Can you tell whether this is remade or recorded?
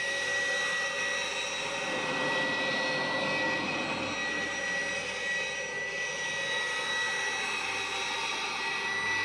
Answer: recorded